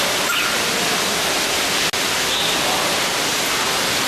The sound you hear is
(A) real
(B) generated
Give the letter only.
A